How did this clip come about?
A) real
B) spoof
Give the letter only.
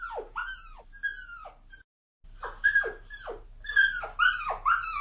A